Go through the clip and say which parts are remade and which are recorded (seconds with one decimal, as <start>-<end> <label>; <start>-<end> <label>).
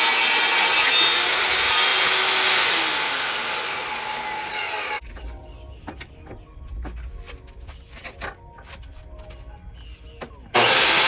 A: 0.0-11.1 recorded